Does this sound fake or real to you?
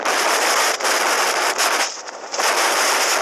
real